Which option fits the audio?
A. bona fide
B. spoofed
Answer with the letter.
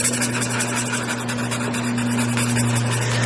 A